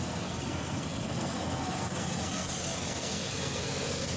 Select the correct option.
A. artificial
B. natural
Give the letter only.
A